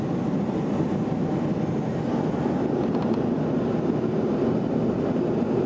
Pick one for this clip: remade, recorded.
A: recorded